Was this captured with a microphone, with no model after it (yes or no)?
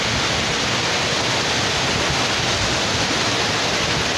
yes